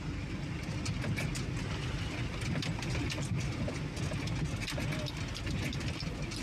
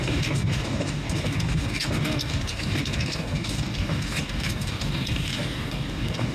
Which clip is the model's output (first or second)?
second